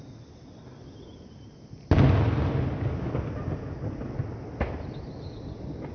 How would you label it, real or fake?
real